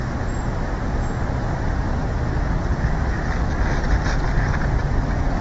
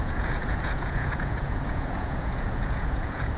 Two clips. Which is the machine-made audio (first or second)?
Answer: second